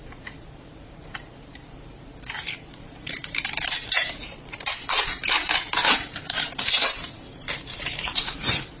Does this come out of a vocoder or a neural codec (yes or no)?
yes